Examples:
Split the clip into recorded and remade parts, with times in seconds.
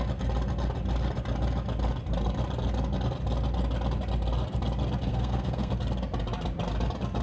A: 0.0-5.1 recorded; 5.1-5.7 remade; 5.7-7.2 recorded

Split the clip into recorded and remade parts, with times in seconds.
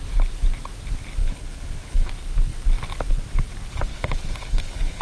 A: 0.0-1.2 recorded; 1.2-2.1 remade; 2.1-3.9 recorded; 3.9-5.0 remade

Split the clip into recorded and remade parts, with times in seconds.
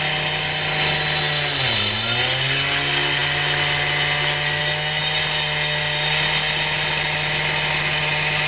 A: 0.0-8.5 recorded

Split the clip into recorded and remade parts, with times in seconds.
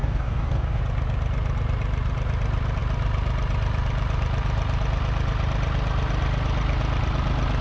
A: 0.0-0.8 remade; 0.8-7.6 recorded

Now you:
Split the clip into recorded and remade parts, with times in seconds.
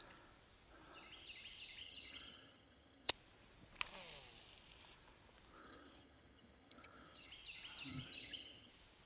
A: 0.0-1.8 recorded; 1.8-3.1 remade; 3.1-5.6 recorded; 5.6-7.3 remade; 7.3-7.9 recorded; 7.9-8.7 remade; 8.7-9.1 recorded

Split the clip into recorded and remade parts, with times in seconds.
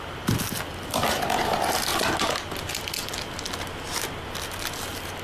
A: 0.0-5.2 recorded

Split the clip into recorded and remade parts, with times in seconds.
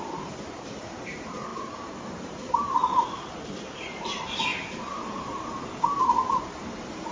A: 0.0-7.1 remade